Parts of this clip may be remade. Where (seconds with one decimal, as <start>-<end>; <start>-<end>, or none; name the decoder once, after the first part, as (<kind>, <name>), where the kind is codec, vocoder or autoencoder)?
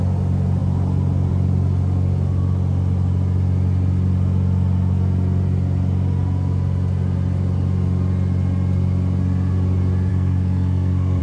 10.1-11.2 (codec, SNAC)